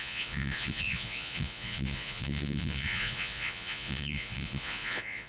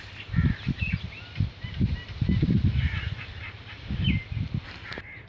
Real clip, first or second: second